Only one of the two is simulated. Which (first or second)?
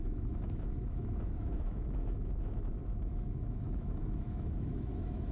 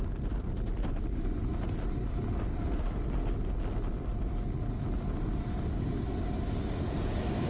first